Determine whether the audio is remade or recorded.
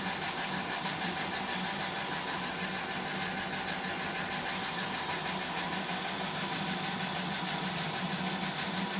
recorded